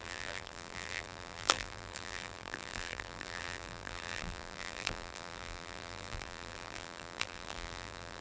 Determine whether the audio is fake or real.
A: fake